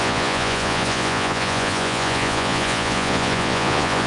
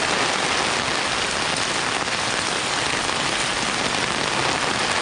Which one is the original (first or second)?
second